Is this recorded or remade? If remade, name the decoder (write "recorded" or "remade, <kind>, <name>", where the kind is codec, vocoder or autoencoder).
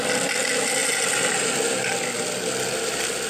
recorded